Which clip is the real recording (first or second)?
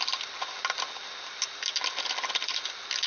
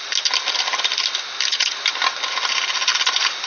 second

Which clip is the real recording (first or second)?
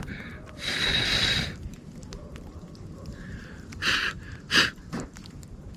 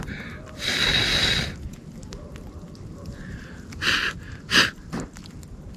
second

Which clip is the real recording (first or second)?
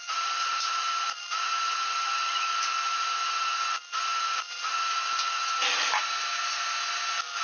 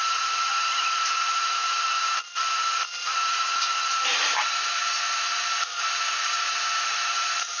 first